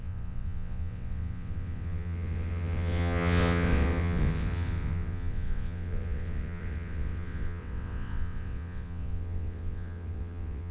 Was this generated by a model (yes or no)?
yes